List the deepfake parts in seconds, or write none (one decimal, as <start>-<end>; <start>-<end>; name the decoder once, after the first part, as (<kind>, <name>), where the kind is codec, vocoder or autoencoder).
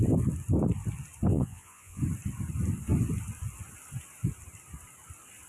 1.3-2.0 (vocoder, Vocos)